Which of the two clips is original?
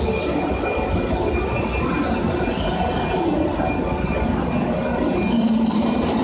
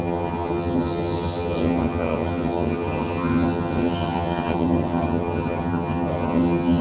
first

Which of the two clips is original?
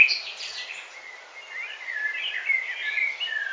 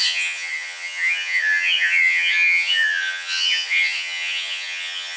first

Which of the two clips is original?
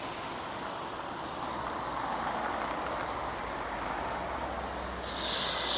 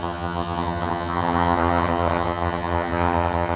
first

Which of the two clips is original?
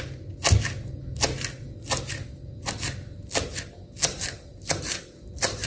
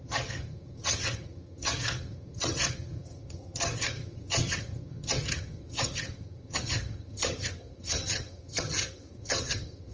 first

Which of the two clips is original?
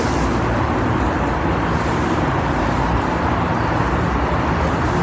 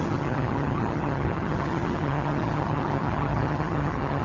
first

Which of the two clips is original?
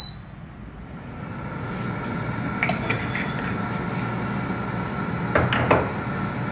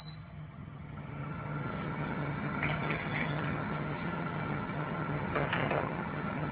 first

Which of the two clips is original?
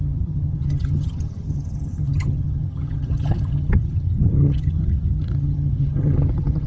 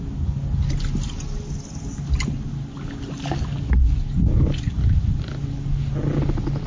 second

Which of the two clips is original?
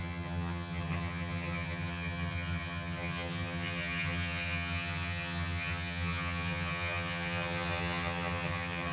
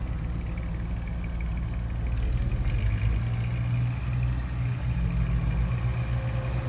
second